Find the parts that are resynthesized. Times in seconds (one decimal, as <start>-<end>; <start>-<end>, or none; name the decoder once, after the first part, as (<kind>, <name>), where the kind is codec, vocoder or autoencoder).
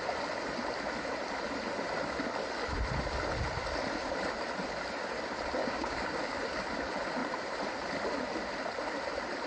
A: 5.6-6.2 (codec, DAC)